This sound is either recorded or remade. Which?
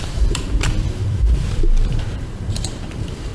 remade